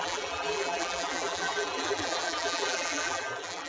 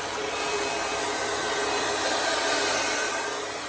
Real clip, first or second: second